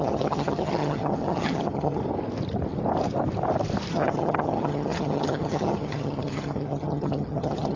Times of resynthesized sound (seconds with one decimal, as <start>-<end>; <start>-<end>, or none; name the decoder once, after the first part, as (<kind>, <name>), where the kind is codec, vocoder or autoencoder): 0.0-2.0 (vocoder, HiFi-GAN); 3.9-7.8